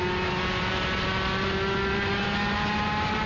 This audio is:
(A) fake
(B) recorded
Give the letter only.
B